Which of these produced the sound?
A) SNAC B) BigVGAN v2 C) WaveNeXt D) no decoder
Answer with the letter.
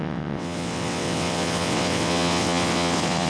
C